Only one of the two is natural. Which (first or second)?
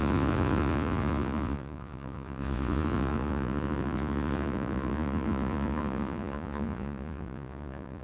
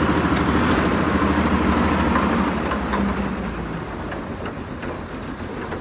second